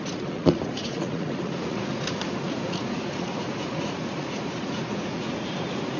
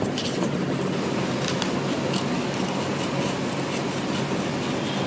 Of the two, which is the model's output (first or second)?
first